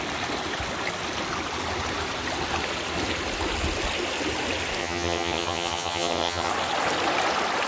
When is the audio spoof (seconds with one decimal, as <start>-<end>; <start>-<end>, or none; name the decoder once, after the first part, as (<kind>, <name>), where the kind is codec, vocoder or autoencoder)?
4.8-6.5 (vocoder, HiFi-GAN)